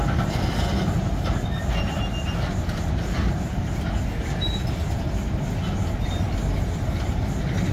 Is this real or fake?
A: real